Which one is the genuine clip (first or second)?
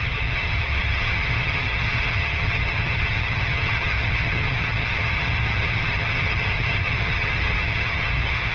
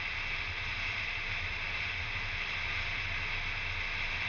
second